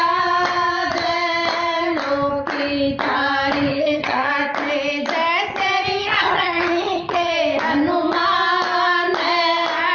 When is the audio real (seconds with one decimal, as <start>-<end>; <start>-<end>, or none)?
0.0-3.7; 4.3-6.0; 7.3-9.9